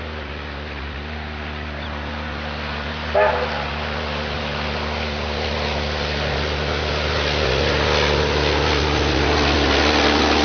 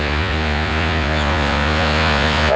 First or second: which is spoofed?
second